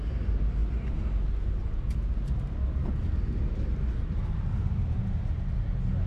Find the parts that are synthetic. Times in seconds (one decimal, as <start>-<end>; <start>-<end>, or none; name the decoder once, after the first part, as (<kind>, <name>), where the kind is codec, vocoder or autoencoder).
none